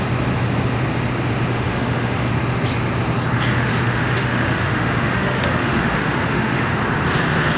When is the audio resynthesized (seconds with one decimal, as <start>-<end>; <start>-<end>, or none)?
1.5-2.3; 3.6-6.8